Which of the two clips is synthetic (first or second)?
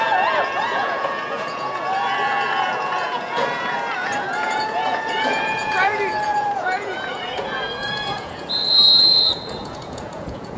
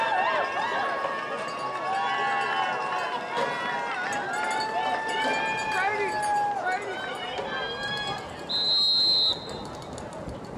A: first